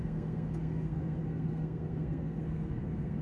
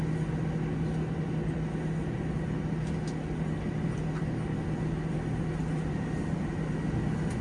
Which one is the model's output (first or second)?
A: first